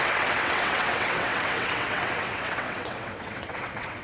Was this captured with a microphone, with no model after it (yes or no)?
no